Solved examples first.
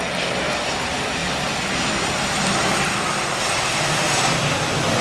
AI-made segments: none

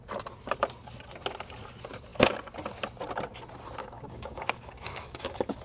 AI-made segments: 3.8-5.6